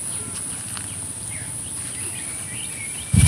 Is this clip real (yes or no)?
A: yes